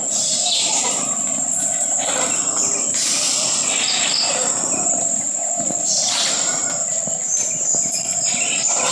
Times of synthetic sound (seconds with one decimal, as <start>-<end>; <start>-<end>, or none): 0.0-1.5; 2.2-3.3; 5.0-6.6

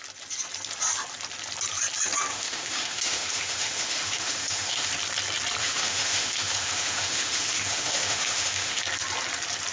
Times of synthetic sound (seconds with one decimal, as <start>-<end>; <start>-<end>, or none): 2.3-4.9; 5.6-8.8

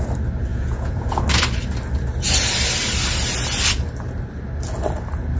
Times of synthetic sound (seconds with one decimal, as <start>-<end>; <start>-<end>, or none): 0.5-1.2